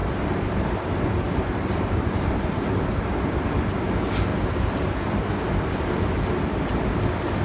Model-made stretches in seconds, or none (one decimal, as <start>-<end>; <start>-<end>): 0.0-2.6; 4.3-5.0